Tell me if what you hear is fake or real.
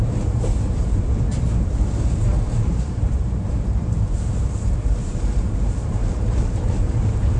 fake